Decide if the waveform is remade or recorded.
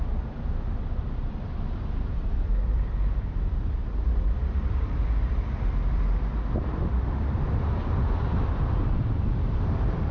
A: remade